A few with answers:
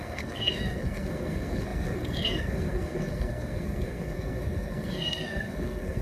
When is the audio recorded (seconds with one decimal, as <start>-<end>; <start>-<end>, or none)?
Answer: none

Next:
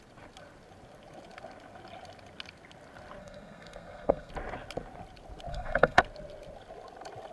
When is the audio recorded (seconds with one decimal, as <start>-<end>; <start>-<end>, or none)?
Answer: 0.0-3.2; 4.3-5.5; 6.0-7.3

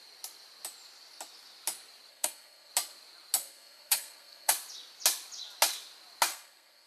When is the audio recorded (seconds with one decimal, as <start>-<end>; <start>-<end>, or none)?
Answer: 0.0-2.1; 2.7-3.4; 4.5-6.3